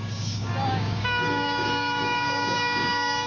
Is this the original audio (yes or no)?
no